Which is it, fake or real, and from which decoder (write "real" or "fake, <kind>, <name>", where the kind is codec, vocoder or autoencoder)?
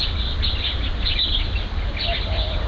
real